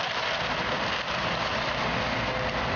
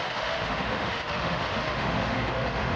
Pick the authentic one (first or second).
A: first